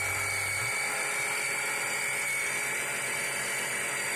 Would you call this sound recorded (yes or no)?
yes